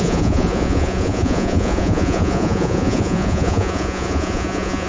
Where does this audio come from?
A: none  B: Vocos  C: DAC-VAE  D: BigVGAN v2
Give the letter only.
B